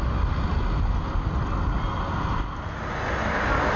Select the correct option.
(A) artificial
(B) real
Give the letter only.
B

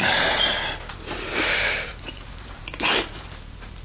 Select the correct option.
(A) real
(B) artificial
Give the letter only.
B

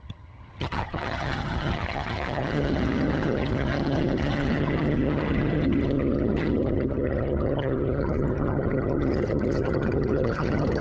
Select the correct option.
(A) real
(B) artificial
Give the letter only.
B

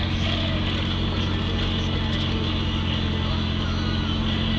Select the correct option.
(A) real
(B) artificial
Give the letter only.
A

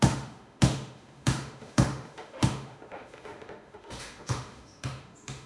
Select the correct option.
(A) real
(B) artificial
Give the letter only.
B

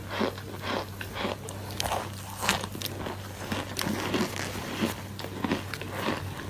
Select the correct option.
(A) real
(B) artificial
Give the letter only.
A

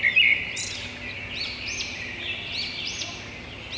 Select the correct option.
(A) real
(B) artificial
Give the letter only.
A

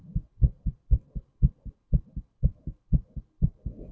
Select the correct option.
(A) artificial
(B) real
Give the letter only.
B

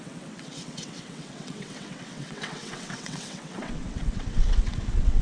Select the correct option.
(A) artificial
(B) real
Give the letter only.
A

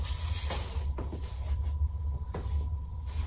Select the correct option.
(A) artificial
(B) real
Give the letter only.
B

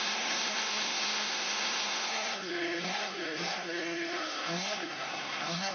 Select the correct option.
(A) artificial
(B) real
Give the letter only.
A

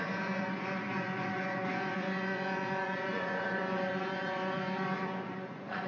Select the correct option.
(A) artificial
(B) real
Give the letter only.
A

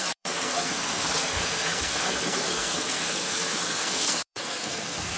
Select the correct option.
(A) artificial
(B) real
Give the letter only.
A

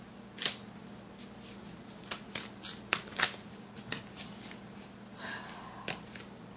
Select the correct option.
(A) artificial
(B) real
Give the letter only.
B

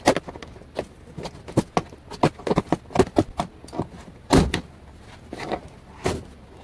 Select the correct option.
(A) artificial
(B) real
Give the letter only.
B